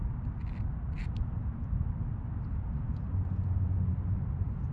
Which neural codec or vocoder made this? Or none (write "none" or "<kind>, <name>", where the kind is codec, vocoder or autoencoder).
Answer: none